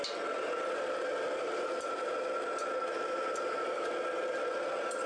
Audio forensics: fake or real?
real